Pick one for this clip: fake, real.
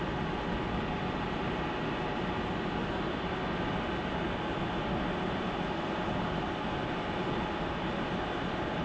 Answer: real